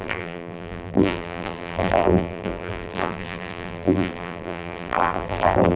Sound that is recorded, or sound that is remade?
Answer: remade